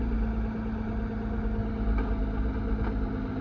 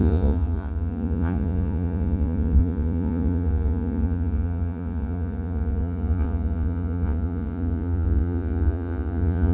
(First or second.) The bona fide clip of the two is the first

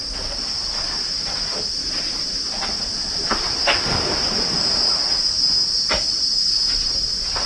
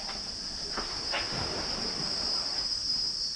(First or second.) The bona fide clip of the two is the first